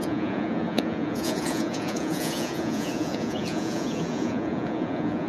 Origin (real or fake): fake